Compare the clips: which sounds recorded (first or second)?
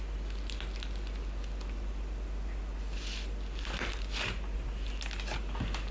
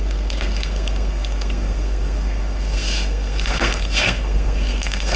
first